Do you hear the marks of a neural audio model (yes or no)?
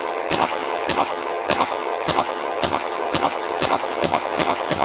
yes